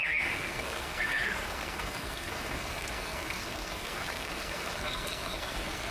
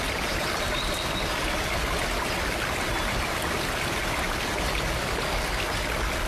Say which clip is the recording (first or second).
second